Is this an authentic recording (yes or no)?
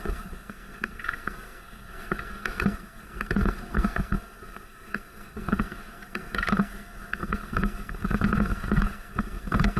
no